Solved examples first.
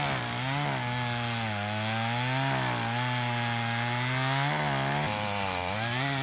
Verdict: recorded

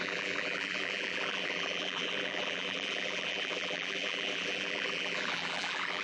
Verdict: remade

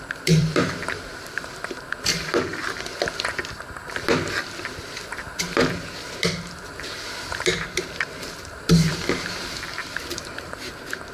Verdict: remade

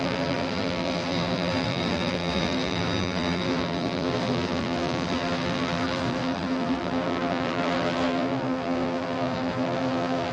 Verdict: remade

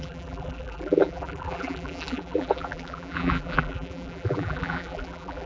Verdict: remade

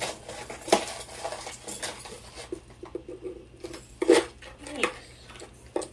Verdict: recorded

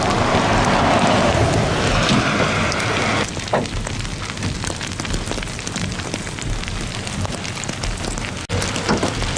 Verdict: recorded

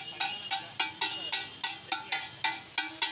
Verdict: recorded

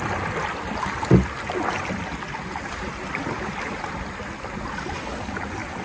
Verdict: recorded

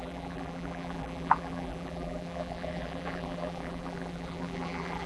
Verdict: remade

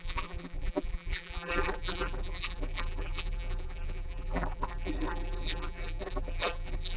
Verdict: remade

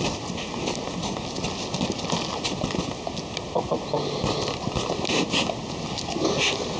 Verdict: recorded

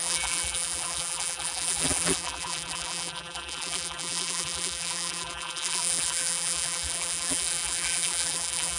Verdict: remade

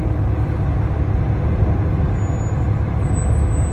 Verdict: recorded